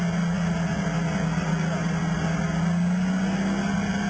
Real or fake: real